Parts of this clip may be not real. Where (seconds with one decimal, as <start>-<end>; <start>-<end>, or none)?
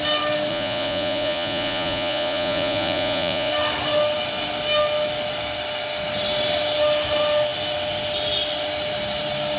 0.5-3.5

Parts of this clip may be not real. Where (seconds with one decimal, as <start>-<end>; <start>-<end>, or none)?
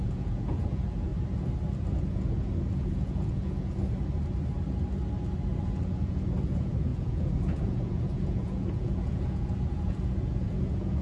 0.0-1.1; 2.1-3.8; 5.6-11.0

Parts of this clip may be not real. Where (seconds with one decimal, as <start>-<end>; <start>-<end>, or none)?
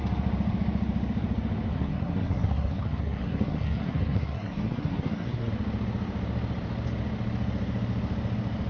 1.7-5.5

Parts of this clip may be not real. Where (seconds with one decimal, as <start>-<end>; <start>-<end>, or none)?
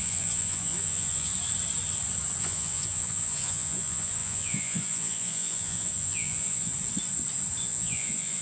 0.0-1.3; 2.4-6.7; 7.6-8.4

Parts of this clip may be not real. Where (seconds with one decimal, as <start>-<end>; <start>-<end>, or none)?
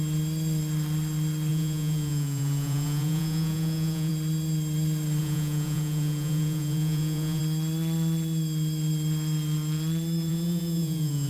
1.5-4.1; 5.2-7.4; 10.3-11.3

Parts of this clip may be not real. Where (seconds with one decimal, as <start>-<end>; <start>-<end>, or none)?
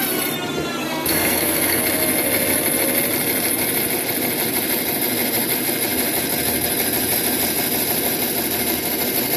0.8-1.8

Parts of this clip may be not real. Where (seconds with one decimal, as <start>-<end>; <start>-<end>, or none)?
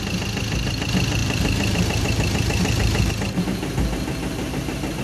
1.2-3.1; 4.3-5.0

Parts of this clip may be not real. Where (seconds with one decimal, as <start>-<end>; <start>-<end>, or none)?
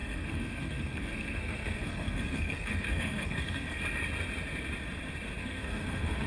0.0-3.8; 5.4-6.3